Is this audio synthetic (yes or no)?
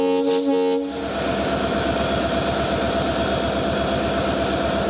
no